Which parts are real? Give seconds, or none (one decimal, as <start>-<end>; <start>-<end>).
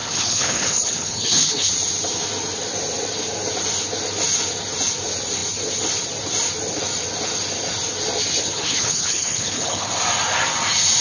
1.7-8.4; 9.9-11.0